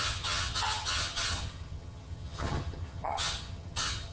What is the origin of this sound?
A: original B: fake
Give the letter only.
B